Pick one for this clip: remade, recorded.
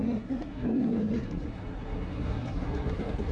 remade